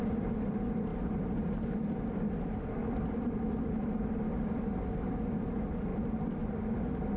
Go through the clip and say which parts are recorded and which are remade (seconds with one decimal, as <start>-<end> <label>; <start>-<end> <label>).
0.0-2.8 recorded; 2.8-4.5 remade; 4.5-5.9 recorded; 5.9-6.5 remade; 6.5-7.2 recorded